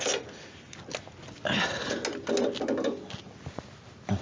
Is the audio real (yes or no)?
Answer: yes